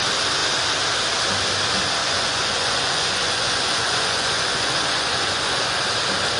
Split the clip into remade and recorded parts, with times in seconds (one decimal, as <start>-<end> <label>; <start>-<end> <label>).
0.0-2.0 recorded; 2.0-5.8 remade; 5.8-6.4 recorded